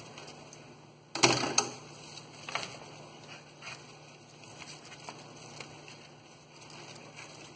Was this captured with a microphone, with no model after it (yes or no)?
yes